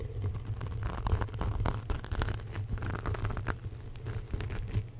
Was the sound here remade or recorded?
recorded